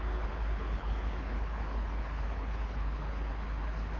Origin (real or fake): fake